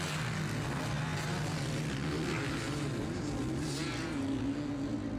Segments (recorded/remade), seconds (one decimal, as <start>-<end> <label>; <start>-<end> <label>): 0.0-5.2 recorded